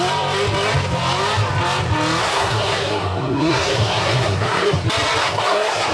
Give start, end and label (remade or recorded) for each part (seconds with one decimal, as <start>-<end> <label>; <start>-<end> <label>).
0.0-2.2 recorded; 2.2-4.8 remade; 4.8-5.2 recorded; 5.2-5.9 remade